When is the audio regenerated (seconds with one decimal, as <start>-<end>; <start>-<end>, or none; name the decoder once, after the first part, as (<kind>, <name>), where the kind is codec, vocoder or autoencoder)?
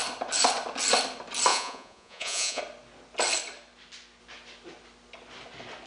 1.5-2.6 (vocoder, Vocos)